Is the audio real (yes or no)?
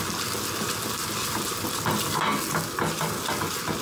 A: yes